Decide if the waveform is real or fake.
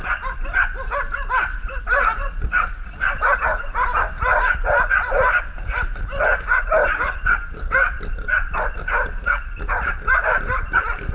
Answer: real